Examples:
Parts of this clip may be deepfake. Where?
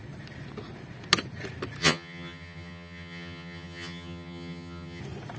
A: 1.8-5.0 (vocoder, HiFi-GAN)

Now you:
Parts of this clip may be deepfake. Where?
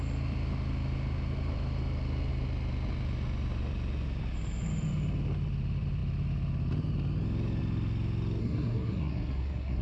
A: 8.4-9.8 (codec, SNAC)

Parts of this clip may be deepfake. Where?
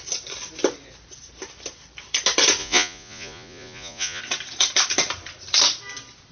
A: 2.6-4.2 (vocoder, Vocos)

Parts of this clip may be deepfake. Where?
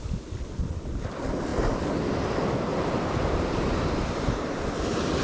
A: 2.7-3.9 (vocoder, BigVGAN v2)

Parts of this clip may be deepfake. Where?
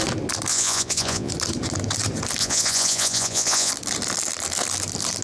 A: 0.5-1.3 (vocoder, Vocos); 2.4-3.7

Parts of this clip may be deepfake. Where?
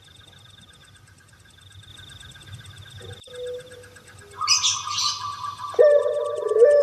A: 0.0-1.9 (vocoder, BigVGAN v2); 5.8-6.8